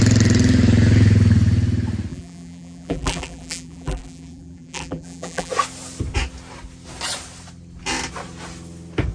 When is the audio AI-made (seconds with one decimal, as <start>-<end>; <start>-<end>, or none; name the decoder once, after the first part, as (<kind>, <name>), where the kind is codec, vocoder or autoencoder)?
2.1-5.5 (vocoder, BigVGAN v2)